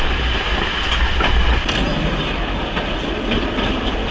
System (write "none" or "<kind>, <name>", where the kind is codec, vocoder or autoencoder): none